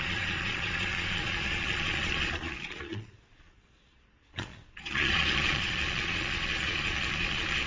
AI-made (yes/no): yes